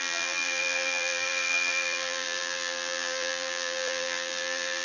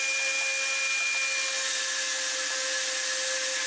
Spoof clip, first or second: first